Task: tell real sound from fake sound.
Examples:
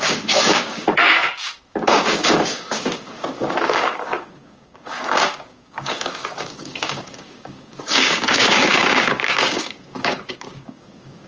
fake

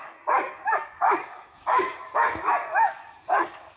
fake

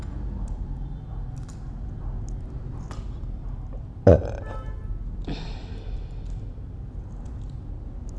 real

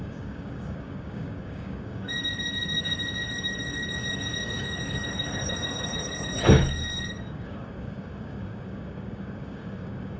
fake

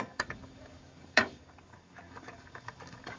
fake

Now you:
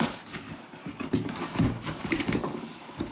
fake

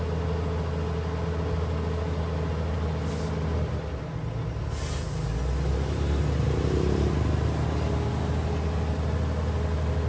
real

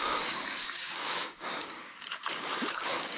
fake